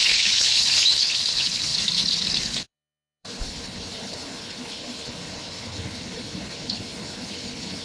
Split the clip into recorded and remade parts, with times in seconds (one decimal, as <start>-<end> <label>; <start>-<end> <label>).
0.0-7.8 remade